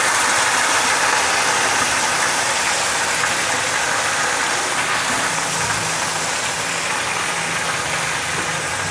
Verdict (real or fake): real